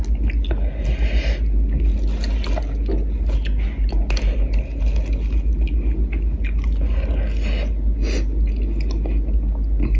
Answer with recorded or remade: recorded